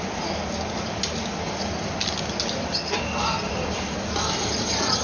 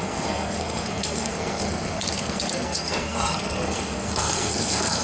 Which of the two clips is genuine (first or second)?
first